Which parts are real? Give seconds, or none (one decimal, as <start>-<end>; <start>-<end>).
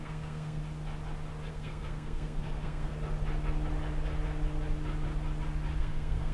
0.6-1.5; 2.9-5.8